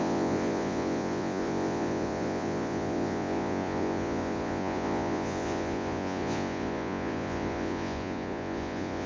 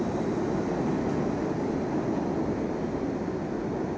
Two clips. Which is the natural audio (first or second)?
second